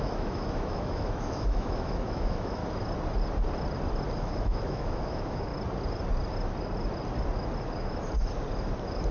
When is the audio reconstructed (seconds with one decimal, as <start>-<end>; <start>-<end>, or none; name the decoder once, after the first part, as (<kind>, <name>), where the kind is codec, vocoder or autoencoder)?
0.0-2.6 (autoencoder, DAC-VAE); 4.2-5.5